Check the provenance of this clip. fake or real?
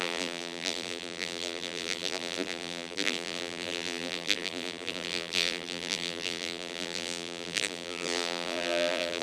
fake